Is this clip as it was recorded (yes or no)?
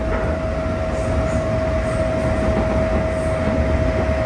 yes